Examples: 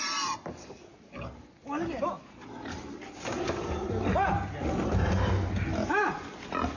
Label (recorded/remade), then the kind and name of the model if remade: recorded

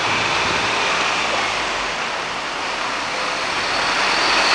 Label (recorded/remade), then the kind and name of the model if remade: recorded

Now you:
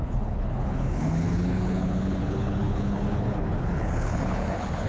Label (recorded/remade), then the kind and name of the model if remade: remade, codec, HILCodec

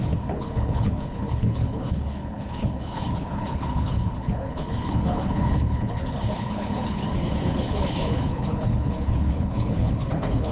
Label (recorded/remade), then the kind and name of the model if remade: remade, codec, HILCodec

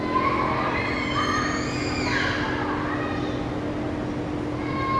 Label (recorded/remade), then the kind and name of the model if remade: recorded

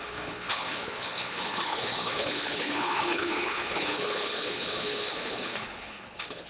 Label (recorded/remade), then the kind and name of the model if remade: remade, codec, HILCodec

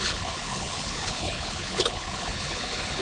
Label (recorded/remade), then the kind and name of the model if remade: remade, codec, HILCodec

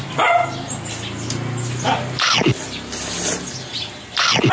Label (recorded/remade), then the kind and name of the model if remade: recorded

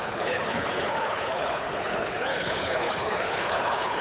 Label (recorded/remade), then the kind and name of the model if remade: remade, codec, HILCodec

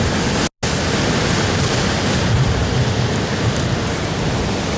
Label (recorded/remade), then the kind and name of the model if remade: recorded